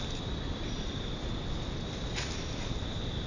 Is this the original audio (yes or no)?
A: yes